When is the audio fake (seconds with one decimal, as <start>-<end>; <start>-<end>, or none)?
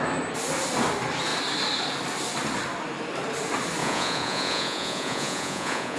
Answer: 3.8-6.0